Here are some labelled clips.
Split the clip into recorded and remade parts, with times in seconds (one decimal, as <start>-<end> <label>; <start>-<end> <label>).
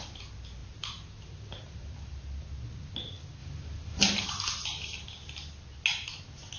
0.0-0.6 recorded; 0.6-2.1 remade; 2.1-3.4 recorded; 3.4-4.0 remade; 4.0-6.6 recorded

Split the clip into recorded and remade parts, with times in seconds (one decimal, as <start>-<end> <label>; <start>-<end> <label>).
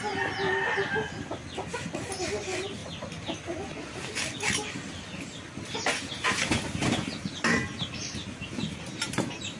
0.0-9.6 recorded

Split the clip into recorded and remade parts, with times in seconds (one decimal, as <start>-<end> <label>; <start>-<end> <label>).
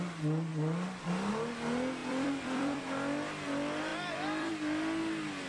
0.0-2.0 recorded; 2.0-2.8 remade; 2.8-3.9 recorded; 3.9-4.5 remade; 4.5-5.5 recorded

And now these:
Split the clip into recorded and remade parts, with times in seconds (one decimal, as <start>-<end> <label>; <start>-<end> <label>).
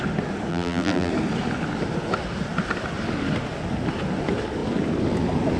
0.0-0.5 recorded; 0.5-1.1 remade; 1.1-5.6 recorded